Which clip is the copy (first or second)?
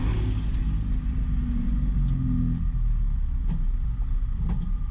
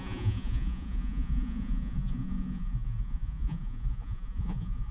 second